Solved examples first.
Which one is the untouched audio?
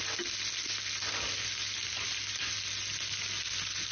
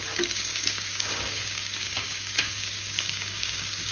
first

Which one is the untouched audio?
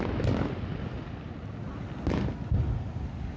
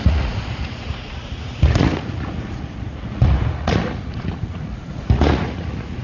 first